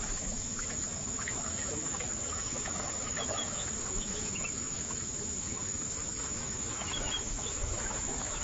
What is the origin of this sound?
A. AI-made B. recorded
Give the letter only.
A